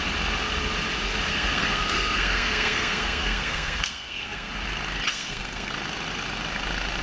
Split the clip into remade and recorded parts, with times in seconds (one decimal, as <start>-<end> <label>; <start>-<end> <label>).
0.0-1.3 recorded; 1.3-4.5 remade; 4.5-5.1 recorded; 5.1-5.7 remade; 5.7-7.0 recorded